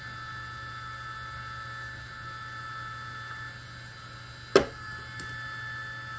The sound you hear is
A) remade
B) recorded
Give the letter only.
B